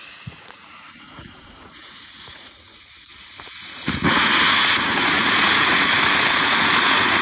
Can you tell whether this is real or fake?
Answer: fake